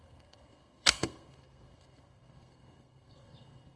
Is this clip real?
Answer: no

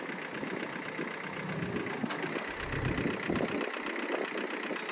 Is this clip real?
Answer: yes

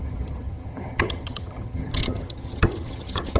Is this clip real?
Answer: no